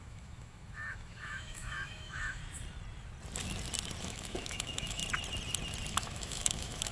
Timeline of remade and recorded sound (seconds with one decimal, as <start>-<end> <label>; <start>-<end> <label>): 0.0-2.4 remade; 2.4-4.0 recorded; 4.0-5.0 remade; 5.0-5.9 recorded; 5.9-6.9 remade